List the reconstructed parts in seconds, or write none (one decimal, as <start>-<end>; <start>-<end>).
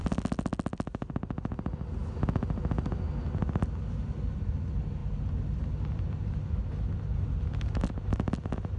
none